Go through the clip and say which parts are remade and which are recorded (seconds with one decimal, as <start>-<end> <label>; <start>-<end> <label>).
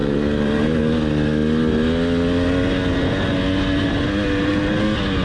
0.0-0.8 remade; 0.8-5.2 recorded